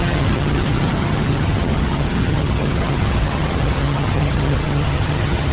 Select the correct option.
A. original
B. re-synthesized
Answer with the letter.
B